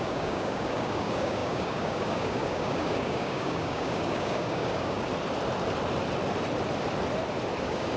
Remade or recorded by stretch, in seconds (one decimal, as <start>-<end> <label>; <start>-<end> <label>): 0.0-5.1 remade; 5.1-7.6 recorded; 7.6-8.0 remade